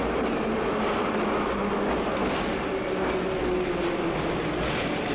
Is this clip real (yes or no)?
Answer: yes